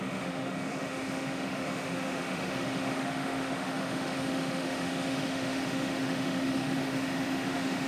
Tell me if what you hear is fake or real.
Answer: fake